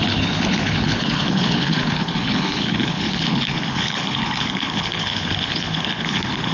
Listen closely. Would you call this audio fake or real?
fake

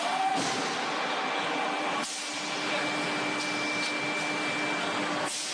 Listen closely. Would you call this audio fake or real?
real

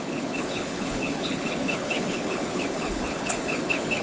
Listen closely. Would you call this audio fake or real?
fake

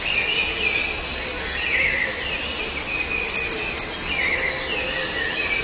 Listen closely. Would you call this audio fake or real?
real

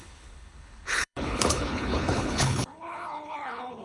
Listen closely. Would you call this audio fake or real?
fake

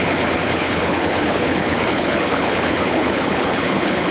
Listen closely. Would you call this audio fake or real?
fake